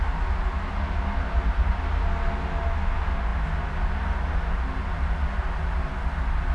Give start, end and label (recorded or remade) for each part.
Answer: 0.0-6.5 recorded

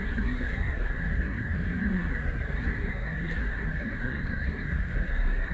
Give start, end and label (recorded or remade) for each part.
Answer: 0.0-5.5 remade